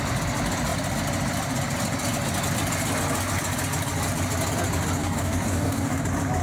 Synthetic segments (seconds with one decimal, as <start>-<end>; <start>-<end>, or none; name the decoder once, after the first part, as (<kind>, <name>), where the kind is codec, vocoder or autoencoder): 5.0-6.0 (codec, DAC)